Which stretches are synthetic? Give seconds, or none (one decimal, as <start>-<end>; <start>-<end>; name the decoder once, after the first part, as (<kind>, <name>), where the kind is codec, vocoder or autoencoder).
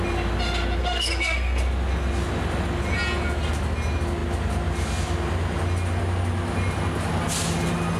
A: 0.8-1.6 (codec, SNAC)